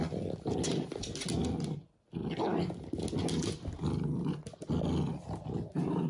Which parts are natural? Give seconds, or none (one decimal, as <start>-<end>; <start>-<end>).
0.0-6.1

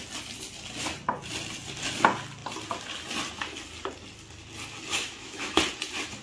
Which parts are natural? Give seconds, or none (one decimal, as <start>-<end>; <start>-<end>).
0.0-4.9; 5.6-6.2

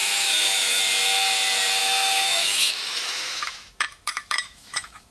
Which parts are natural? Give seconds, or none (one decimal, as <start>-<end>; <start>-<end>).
0.8-1.8

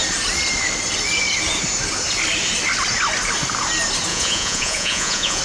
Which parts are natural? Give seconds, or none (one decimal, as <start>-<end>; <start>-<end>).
0.0-4.1